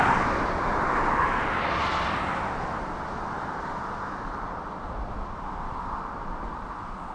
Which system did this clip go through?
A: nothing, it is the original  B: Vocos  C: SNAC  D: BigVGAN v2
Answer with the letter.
A